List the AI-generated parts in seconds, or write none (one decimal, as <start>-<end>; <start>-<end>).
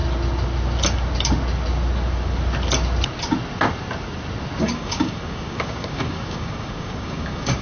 4.6-7.6